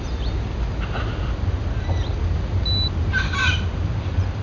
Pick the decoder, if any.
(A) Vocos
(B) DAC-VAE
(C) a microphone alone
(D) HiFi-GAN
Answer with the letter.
C